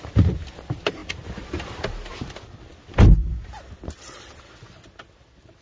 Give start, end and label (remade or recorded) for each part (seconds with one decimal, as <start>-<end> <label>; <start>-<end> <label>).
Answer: 0.0-5.6 recorded